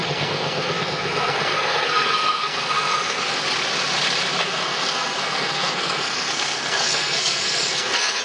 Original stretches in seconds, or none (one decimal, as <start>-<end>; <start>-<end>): 3.2-4.4